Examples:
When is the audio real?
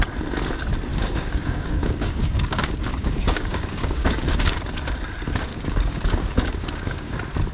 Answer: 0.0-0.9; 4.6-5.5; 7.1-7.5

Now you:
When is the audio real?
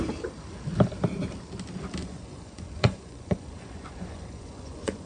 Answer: 0.0-2.0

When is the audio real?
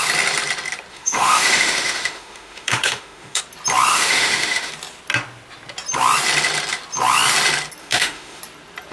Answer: 0.0-0.9; 3.4-3.9; 4.7-7.8; 8.4-8.9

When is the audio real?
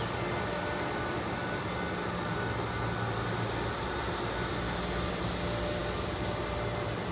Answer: 0.0-7.1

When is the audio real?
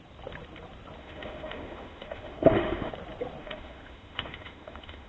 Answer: 0.0-1.0; 2.9-3.4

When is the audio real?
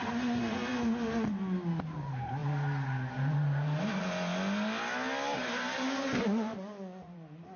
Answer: 0.0-5.4